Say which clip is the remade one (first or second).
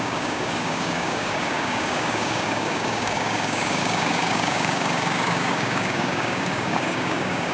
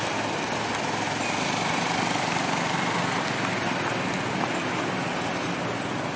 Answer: first